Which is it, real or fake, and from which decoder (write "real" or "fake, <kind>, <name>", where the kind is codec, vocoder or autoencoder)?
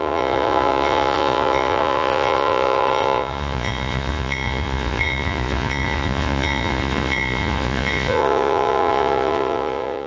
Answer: fake, vocoder, Vocos